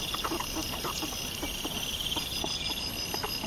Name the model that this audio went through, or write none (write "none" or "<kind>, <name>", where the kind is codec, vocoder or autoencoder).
none